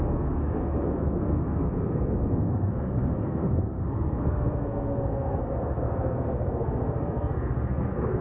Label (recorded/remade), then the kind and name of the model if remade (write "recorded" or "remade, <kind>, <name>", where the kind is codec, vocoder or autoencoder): remade, codec, SNAC